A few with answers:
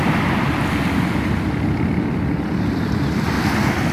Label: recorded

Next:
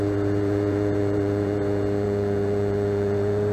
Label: remade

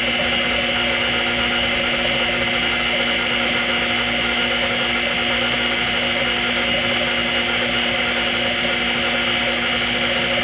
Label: recorded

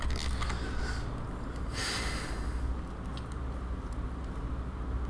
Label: recorded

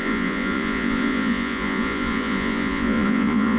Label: remade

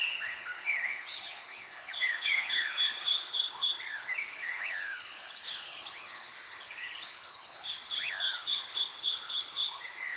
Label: remade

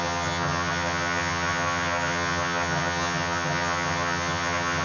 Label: remade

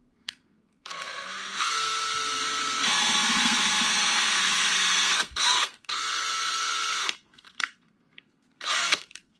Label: remade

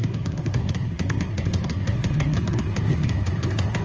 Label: remade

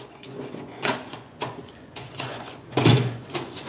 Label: remade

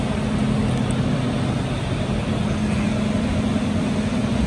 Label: recorded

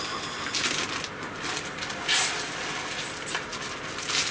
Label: recorded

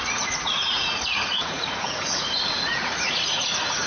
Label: remade